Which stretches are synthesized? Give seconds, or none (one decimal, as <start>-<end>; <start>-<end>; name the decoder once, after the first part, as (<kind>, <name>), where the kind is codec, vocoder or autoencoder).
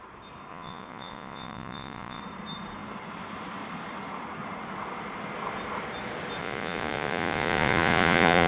0.5-2.2 (vocoder, Vocos); 6.4-8.5